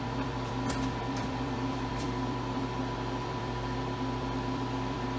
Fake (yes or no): yes